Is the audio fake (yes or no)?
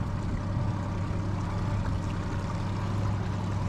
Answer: no